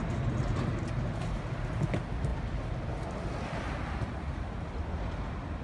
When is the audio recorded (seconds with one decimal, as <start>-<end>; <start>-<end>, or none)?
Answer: 0.0-5.6